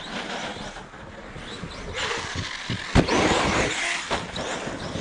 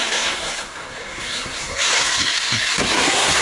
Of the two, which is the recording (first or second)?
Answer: first